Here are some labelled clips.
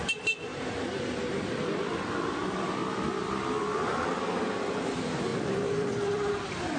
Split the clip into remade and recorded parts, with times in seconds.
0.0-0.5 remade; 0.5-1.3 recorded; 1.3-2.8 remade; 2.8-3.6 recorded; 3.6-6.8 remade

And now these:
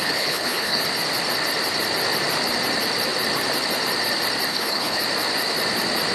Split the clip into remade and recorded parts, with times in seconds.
0.0-0.8 remade; 0.8-4.5 recorded; 4.5-5.0 remade; 5.0-6.1 recorded

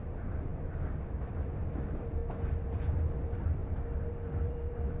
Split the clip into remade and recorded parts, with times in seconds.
0.0-0.5 remade; 0.5-1.2 recorded; 1.2-2.2 remade; 2.2-2.7 recorded; 2.7-3.6 remade; 3.6-4.1 recorded; 4.1-5.0 remade

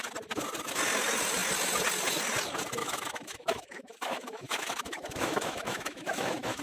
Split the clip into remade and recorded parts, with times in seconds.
0.0-2.8 recorded; 2.8-6.6 remade

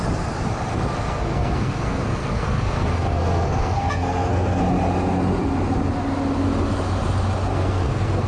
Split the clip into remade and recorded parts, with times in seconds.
0.0-0.7 recorded; 0.7-4.6 remade; 4.6-7.5 recorded; 7.5-8.3 remade

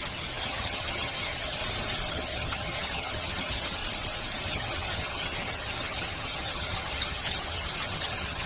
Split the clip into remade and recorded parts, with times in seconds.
0.0-1.6 remade; 1.6-2.1 recorded; 2.1-3.8 remade; 3.8-4.5 recorded; 4.5-8.5 remade

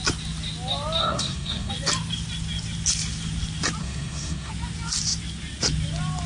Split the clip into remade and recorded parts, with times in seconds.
0.0-1.0 recorded; 1.0-1.7 remade; 1.7-3.8 recorded; 3.8-4.5 remade; 4.5-6.3 recorded